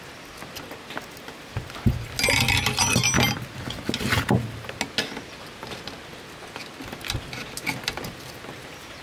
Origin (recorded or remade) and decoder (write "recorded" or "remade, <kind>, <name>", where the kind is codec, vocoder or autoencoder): recorded